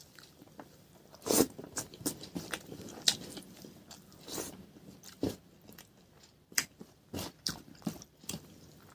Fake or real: fake